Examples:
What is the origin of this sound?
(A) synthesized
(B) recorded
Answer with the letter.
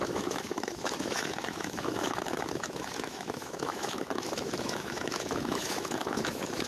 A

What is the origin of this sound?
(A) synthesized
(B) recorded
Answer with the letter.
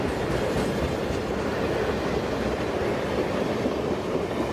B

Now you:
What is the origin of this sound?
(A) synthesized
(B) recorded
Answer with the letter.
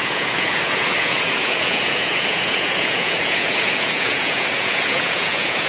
A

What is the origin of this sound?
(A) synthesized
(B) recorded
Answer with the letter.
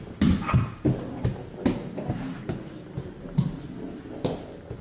B